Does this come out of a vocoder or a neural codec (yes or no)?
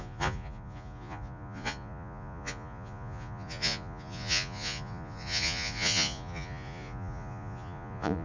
yes